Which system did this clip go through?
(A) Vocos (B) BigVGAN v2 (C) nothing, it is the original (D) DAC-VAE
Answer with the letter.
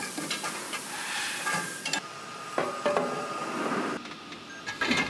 C